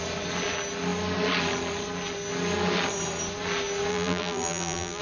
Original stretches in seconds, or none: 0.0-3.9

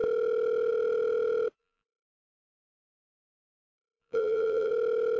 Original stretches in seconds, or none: 0.0-1.6; 4.7-5.2

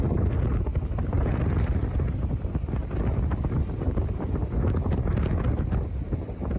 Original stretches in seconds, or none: 0.0-3.6; 4.4-6.6

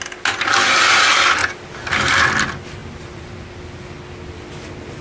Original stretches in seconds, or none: 0.0-5.0

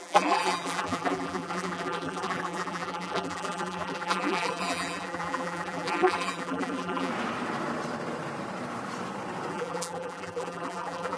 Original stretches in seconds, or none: 7.1-9.5

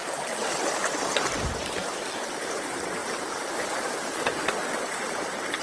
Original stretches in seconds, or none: 0.0-3.0; 4.7-5.6

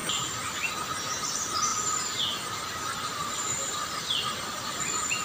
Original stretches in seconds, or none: 0.7-1.7; 4.8-5.2